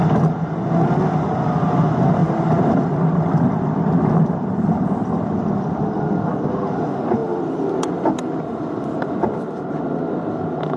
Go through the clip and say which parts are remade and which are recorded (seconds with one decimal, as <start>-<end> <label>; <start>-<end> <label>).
0.0-2.2 recorded; 2.2-5.5 remade; 5.5-7.2 recorded; 7.2-9.0 remade; 9.0-10.8 recorded